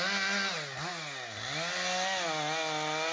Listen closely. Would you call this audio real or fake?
real